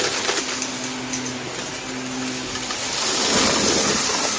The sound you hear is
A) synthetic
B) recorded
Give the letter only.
B